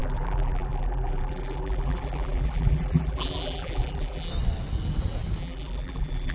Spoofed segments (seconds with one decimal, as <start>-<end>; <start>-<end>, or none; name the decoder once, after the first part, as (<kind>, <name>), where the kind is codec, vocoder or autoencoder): 0.0-4.3 (vocoder, BigVGAN v2); 5.4-6.3